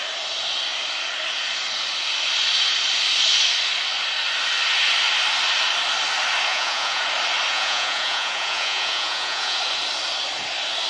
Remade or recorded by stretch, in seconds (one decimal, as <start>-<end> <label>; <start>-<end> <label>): 0.0-6.5 recorded; 6.5-7.0 remade; 7.0-7.5 recorded; 7.5-9.6 remade; 9.6-10.9 recorded